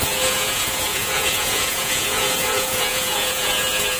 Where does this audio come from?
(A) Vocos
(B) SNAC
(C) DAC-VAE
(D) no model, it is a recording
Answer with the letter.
A